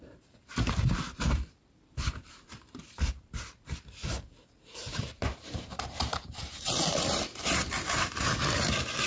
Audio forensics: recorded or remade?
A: remade